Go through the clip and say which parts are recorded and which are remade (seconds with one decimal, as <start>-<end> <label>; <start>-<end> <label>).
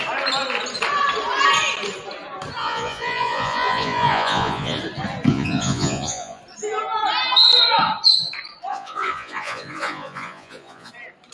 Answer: 0.0-2.6 recorded; 2.6-4.8 remade; 4.8-5.3 recorded; 5.3-6.4 remade; 6.4-8.7 recorded; 8.7-10.9 remade; 10.9-11.3 recorded